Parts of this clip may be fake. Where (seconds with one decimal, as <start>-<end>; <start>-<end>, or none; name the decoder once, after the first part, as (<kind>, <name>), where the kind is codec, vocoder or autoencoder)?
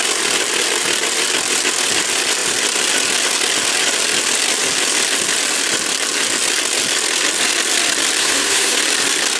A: 8.2-8.8 (codec, SNAC)